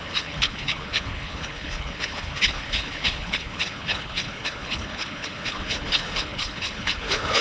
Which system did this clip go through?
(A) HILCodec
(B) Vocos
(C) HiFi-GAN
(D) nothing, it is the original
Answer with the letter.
A